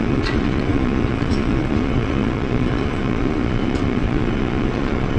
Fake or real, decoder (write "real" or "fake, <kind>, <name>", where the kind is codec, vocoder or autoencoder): fake, vocoder, Vocos